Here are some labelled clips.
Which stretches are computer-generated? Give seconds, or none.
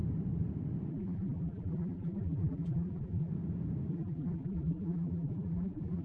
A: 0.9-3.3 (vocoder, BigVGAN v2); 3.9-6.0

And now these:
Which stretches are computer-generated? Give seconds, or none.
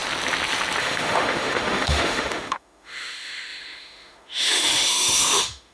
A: 0.8-5.7 (autoencoder, DAC-VAE)